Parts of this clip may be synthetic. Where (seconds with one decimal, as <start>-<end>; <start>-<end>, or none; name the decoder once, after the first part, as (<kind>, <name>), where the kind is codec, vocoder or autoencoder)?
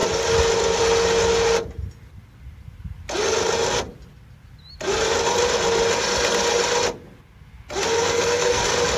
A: 7.9-8.6 (codec, SNAC)